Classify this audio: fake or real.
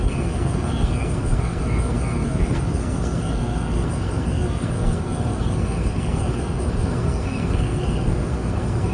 fake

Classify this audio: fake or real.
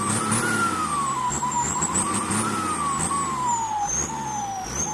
real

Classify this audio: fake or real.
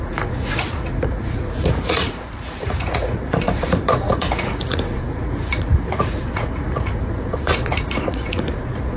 fake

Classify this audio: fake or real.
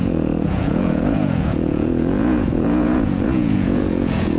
fake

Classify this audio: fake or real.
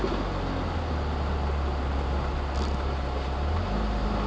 real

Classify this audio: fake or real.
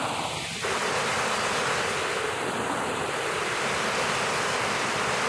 real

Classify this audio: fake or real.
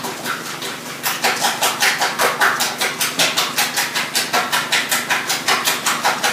real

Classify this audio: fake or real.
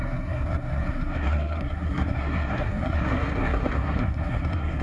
fake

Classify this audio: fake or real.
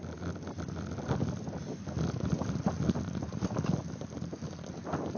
real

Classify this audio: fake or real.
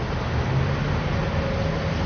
real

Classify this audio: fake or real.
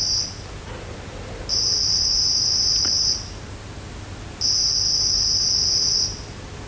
real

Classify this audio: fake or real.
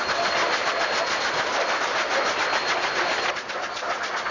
real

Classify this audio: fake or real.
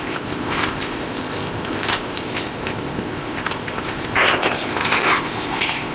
fake